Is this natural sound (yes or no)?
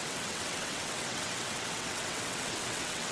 no